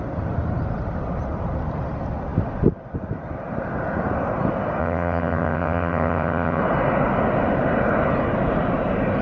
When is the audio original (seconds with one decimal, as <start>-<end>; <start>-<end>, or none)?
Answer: 0.0-4.8; 6.6-9.2